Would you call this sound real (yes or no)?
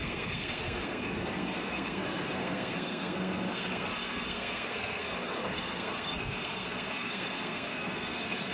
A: no